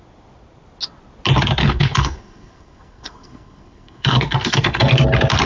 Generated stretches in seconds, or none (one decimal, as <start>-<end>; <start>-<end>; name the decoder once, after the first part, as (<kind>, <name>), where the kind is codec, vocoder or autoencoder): 1.6-4.9 (codec, SNAC)